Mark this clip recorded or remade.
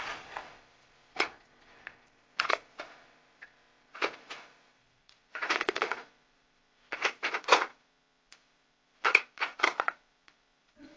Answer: remade